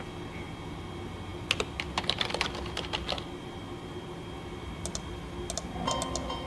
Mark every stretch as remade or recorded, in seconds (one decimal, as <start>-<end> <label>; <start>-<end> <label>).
0.0-6.5 recorded